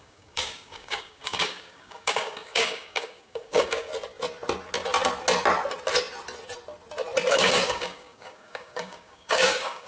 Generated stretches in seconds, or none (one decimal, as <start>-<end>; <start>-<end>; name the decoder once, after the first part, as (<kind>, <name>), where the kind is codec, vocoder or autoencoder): 0.0-3.9 (codec, DAC); 7.3-9.9